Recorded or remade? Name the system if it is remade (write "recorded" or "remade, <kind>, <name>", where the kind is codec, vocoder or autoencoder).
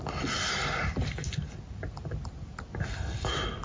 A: recorded